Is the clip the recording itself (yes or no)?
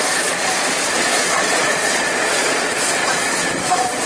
no